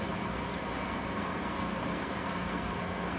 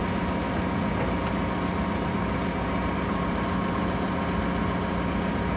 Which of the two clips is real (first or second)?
second